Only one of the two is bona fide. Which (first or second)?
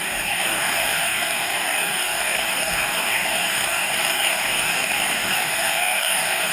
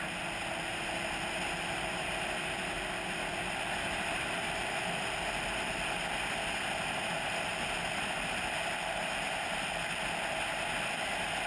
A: second